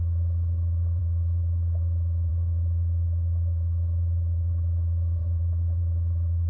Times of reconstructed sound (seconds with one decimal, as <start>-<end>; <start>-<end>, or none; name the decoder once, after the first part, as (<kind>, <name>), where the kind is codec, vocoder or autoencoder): none

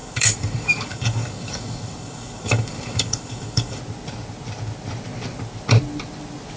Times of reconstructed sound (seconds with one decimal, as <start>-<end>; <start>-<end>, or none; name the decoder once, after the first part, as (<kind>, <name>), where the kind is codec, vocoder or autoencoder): 0.0-3.8 (codec, DAC)